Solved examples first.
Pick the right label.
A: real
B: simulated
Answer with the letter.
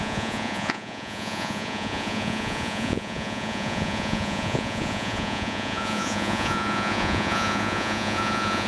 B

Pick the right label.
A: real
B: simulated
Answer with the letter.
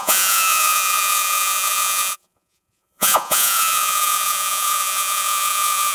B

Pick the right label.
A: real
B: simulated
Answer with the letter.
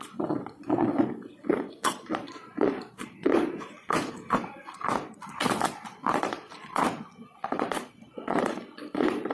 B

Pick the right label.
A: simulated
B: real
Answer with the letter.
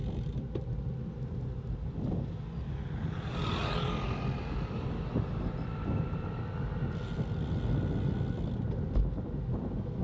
B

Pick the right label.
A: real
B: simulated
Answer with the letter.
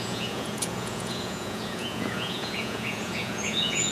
B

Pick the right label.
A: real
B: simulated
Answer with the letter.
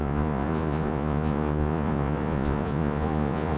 B